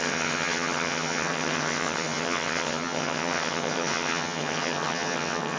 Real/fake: fake